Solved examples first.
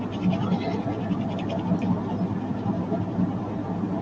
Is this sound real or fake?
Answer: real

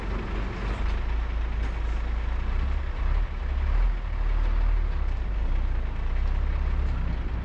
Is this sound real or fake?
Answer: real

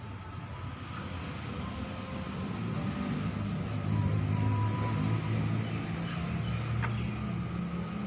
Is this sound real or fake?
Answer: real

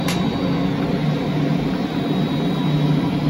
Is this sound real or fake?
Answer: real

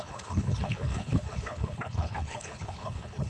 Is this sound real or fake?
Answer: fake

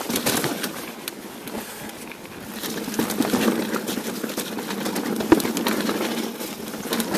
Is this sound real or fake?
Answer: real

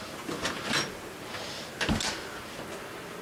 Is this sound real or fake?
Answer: real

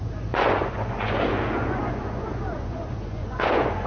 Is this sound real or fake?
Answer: fake